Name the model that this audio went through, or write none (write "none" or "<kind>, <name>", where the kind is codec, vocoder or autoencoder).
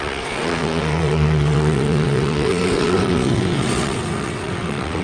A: vocoder, WaveNeXt